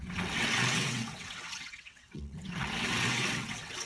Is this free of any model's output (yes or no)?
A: no